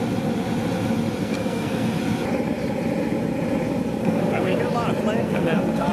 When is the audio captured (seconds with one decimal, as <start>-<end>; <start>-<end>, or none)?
0.0-1.2; 2.0-4.0; 4.6-5.2